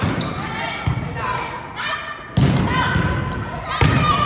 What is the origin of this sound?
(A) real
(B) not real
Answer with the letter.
A